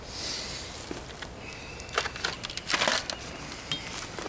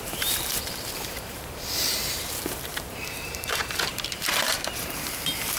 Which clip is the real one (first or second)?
first